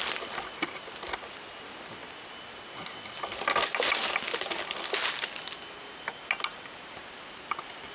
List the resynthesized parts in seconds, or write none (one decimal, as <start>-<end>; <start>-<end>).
none